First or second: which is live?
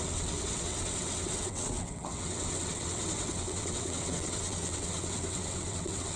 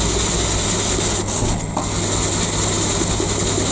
second